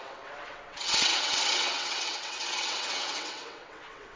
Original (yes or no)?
no